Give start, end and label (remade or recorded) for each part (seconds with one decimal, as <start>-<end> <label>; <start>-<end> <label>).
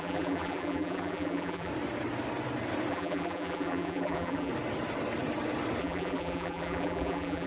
0.0-1.7 remade; 1.7-2.9 recorded; 2.9-4.5 remade; 4.5-5.8 recorded; 5.8-7.5 remade